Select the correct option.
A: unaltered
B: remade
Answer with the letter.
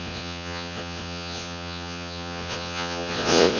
B